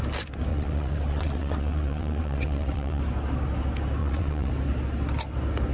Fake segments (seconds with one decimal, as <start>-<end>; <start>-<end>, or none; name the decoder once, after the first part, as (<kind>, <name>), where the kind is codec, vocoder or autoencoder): 0.5-3.0 (vocoder, WaveNeXt); 4.0-4.5